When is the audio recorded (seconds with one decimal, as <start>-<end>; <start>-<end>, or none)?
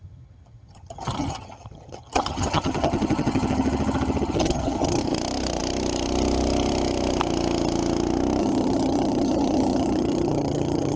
5.0-8.4